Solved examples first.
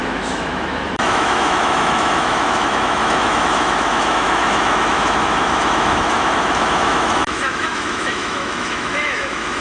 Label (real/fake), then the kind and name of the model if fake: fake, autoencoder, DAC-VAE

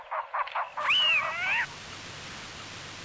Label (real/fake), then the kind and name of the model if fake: real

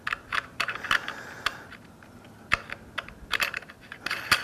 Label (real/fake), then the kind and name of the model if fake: real